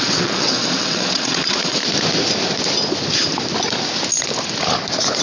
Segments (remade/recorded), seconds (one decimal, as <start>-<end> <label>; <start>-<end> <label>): 0.0-1.8 remade; 1.8-5.2 recorded